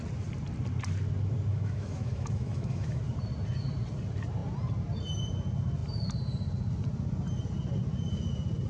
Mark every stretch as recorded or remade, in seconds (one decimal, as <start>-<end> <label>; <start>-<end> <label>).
0.0-1.5 recorded; 1.5-3.0 remade; 3.0-8.7 recorded

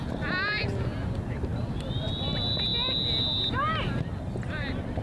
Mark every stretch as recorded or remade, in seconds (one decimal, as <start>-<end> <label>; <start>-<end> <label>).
0.0-5.0 recorded